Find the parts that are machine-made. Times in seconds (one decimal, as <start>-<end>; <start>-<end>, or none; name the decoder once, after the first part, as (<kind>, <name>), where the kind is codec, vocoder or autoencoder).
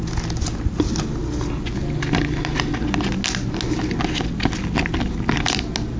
none